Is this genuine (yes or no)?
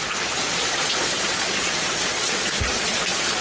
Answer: no